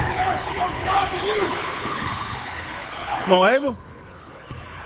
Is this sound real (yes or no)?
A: no